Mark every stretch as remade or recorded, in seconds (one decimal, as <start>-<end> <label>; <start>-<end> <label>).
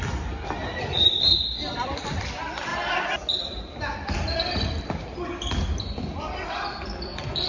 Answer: 0.0-2.7 remade; 2.7-6.2 recorded; 6.2-7.5 remade